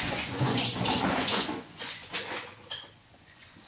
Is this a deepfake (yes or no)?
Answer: yes